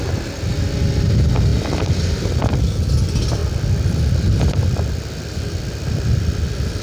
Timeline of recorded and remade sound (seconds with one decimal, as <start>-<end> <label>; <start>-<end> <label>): 0.0-6.8 recorded